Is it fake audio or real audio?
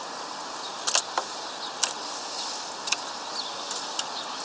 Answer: real